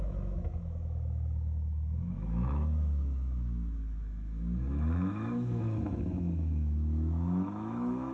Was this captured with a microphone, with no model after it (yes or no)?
no